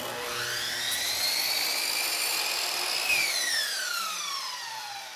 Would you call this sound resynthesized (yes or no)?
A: no